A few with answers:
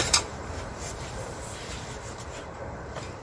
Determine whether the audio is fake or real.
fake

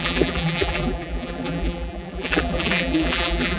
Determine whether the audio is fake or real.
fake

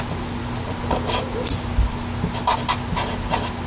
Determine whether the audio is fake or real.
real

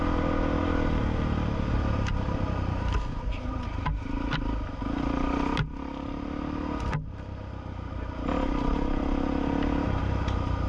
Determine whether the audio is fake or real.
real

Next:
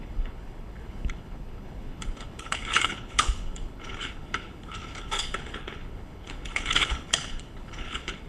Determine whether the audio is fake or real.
fake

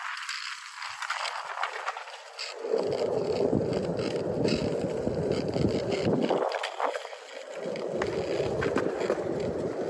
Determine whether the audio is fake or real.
real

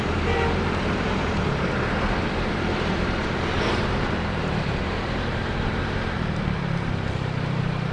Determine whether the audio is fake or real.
fake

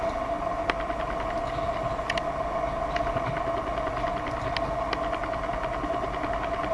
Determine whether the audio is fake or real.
real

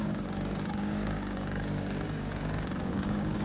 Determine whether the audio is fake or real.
fake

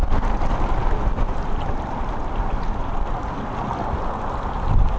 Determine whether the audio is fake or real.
fake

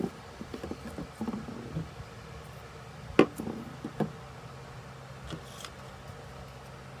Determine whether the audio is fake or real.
real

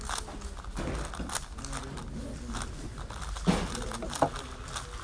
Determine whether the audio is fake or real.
real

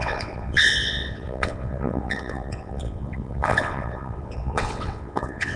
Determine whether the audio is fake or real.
fake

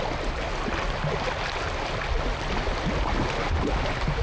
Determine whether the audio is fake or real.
real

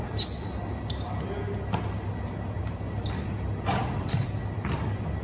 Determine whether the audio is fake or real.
real